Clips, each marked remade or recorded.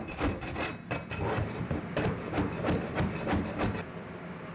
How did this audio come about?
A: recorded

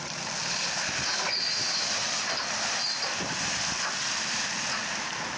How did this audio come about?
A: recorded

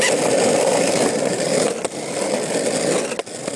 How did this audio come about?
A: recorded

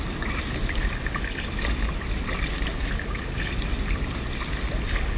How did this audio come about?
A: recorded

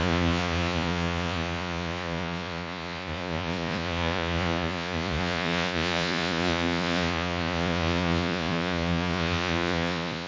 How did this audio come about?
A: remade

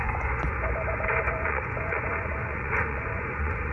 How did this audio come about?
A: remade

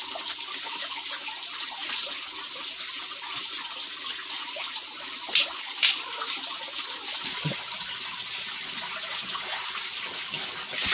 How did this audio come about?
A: recorded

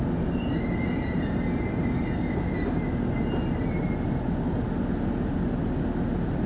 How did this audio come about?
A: recorded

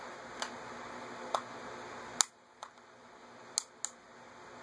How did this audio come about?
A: recorded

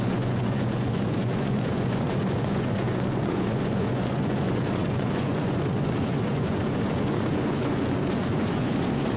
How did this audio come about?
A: remade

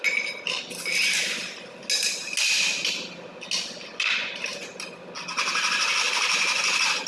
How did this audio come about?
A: recorded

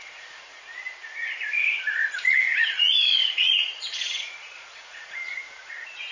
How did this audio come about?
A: remade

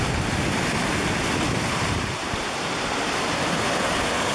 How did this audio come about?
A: recorded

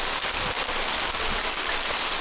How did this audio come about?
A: recorded